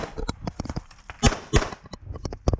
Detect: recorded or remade recorded